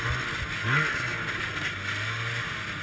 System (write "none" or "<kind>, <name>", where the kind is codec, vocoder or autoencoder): none